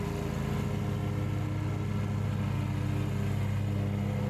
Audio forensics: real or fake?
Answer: real